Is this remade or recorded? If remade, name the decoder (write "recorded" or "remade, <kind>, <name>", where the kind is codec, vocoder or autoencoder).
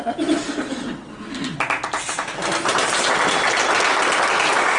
recorded